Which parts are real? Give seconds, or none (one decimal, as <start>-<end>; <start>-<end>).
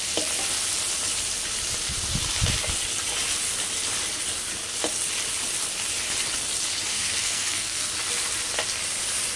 0.0-6.9; 7.9-9.4